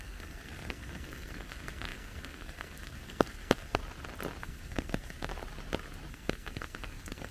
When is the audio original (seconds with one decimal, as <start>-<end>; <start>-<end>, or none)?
3.8-4.4; 5.3-6.1